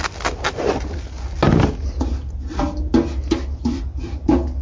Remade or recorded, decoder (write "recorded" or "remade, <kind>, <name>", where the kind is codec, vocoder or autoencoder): recorded